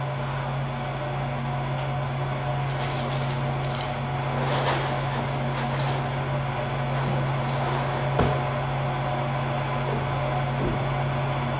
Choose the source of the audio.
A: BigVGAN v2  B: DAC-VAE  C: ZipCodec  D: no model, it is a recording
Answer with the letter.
D